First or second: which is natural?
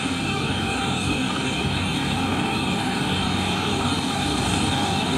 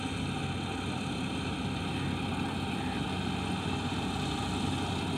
second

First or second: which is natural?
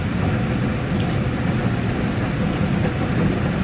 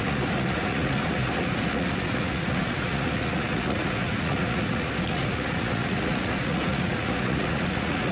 first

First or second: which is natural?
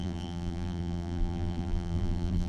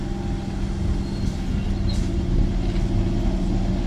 second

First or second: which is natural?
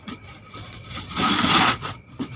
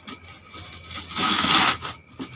second